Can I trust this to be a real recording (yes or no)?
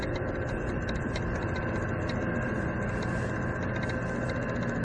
yes